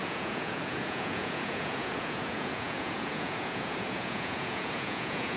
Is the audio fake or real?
fake